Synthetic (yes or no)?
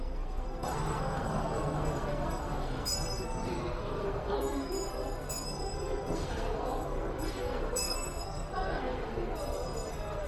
yes